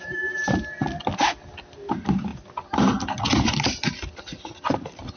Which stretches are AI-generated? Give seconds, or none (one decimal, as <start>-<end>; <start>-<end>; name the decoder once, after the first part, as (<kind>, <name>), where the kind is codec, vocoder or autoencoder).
none

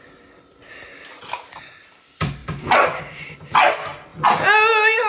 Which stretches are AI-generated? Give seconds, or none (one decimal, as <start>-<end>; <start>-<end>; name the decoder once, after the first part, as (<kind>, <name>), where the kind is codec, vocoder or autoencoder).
none

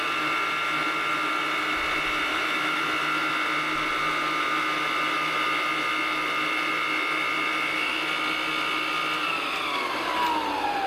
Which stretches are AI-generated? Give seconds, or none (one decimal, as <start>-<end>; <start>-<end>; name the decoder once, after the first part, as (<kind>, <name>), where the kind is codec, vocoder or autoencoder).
2.3-2.8 (autoencoder, DAC-VAE)

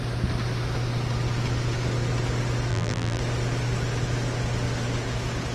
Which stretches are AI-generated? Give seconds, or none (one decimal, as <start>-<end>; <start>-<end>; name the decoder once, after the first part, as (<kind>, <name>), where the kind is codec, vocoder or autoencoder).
2.7-3.2 (vocoder, BigVGAN v2)

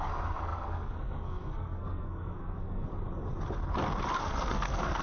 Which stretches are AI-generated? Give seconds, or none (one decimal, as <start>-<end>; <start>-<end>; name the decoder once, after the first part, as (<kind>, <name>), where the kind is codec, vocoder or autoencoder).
0.0-2.9 (codec, SNAC); 4.2-5.0

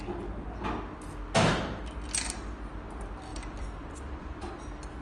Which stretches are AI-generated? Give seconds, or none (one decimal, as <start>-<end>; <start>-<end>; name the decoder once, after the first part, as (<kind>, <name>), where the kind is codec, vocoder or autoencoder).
3.3-4.5 (vocoder, BigVGAN v2)

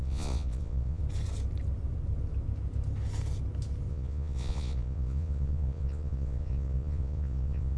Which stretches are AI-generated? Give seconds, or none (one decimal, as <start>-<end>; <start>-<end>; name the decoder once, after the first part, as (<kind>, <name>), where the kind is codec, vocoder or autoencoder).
0.0-1.0 (vocoder, Vocos); 3.9-7.8

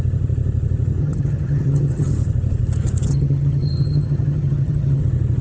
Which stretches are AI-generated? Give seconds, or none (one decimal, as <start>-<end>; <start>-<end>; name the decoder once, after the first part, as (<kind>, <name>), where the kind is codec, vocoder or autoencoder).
1.0-2.1 (vocoder, HiFi-GAN); 3.1-5.0